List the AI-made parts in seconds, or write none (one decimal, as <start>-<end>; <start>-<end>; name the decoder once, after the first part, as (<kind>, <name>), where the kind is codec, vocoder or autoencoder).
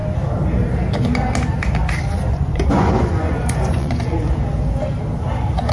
2.3-4.2 (vocoder, Vocos)